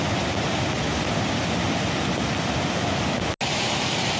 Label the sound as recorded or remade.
recorded